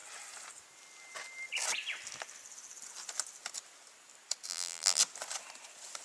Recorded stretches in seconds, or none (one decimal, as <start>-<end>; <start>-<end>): 0.0-4.5; 5.0-6.0